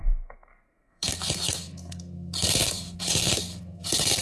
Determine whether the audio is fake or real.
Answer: fake